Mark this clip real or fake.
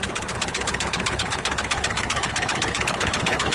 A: fake